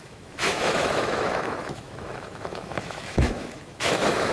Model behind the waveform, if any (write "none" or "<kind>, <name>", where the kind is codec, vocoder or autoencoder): autoencoder, DAC-VAE